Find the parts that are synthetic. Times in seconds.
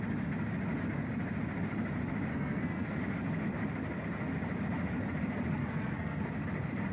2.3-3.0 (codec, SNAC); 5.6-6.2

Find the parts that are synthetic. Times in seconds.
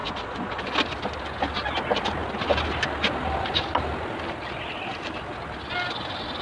0.0-0.6 (vocoder, Vocos)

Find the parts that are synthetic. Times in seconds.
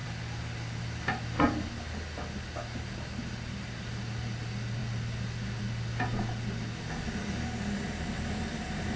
none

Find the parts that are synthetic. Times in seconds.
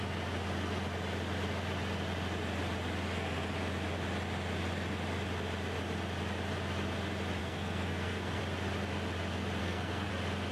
7.4-8.4 (codec, SNAC); 9.6-10.1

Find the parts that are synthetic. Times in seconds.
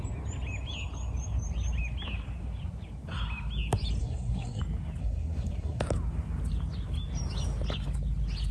4.0-4.6 (codec, SNAC); 5.0-5.8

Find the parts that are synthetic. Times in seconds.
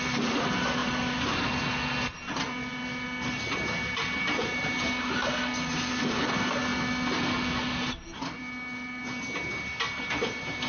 none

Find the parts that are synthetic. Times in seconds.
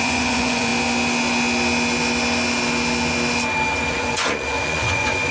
0.0-0.7 (vocoder, Vocos); 3.9-5.3